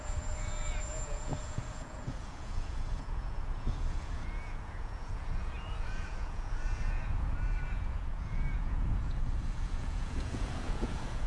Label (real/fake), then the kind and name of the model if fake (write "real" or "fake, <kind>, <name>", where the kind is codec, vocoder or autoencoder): fake, vocoder, Vocos